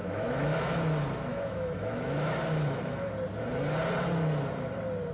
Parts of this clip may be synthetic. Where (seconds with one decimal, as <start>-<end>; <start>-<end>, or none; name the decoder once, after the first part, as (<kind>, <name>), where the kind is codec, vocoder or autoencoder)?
0.0-0.6 (autoencoder, DAC-VAE); 1.3-3.1